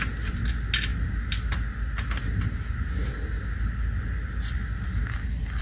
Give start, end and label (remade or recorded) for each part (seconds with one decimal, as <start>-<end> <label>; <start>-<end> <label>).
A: 0.0-5.6 recorded